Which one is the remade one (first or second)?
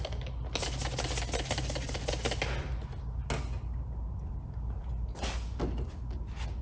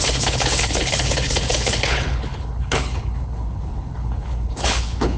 second